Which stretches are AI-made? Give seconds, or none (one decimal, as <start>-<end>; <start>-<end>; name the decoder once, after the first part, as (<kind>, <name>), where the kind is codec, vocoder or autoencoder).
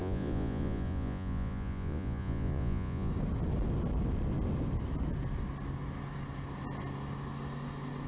0.0-3.1 (vocoder, Vocos)